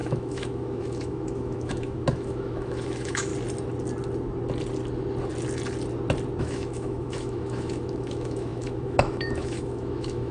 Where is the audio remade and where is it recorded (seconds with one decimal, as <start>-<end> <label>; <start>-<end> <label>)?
0.0-3.3 remade; 3.3-6.4 recorded; 6.4-10.3 remade